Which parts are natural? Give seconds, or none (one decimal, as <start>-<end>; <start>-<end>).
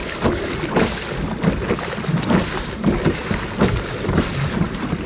0.0-2.6; 3.2-4.4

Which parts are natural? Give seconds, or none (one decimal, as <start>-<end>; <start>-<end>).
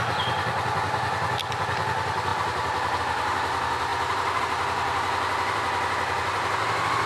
2.3-3.0; 3.9-4.4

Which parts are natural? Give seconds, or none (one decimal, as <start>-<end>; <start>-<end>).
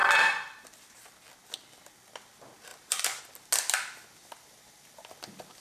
0.0-2.7; 3.2-5.6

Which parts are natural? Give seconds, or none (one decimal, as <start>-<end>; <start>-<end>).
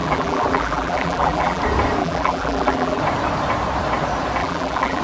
1.6-2.0; 3.0-4.4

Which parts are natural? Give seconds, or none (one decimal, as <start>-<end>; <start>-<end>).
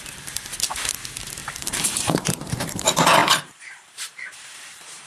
0.0-1.4; 2.7-3.2